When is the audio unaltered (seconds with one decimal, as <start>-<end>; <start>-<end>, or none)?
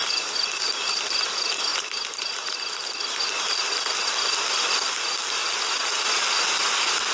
0.0-7.1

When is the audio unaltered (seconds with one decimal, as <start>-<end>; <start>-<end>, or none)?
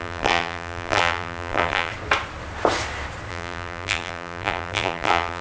1.9-3.3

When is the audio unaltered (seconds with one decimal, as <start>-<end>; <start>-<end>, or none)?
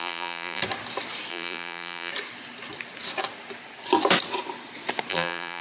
0.6-1.3; 2.1-5.1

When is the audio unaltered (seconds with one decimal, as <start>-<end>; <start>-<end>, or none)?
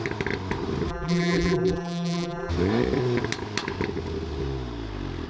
0.0-0.9; 2.5-5.3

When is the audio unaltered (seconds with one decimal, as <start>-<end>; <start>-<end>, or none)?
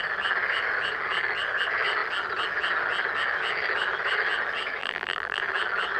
0.0-4.8; 5.4-6.0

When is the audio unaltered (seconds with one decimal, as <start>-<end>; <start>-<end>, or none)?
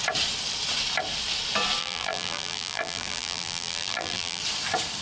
0.0-1.8; 4.4-5.0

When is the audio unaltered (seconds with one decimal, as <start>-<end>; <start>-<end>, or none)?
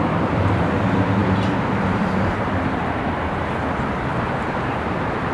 4.1-5.3